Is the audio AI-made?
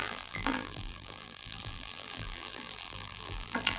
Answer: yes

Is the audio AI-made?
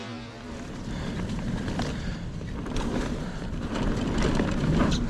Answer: yes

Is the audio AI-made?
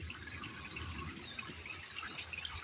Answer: no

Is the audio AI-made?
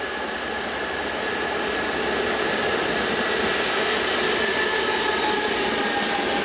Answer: no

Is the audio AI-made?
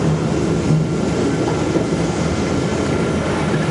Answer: no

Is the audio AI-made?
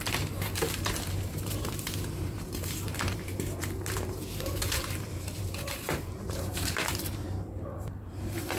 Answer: yes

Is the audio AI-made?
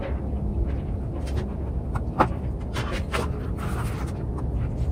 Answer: no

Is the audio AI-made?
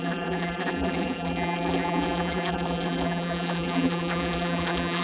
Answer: yes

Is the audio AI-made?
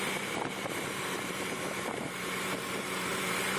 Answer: yes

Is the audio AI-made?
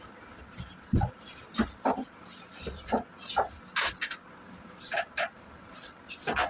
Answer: no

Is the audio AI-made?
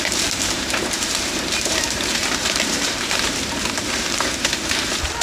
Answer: yes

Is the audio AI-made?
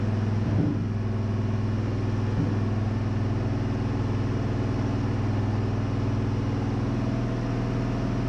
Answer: no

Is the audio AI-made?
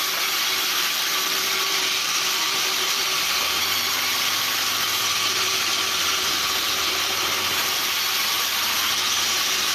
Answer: yes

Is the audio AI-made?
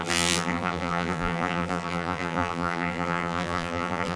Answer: yes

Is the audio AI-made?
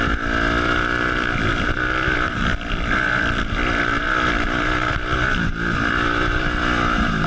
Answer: yes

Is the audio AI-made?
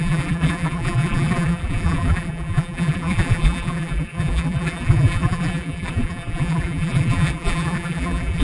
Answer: yes